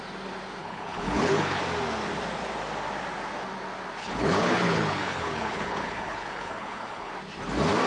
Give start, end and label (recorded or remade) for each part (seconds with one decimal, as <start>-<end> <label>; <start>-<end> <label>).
0.0-0.6 recorded; 0.6-1.6 remade; 1.6-4.0 recorded; 4.0-7.1 remade; 7.1-7.9 recorded